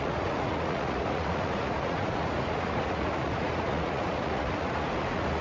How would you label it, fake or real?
fake